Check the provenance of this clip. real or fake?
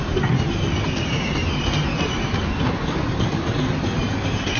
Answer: real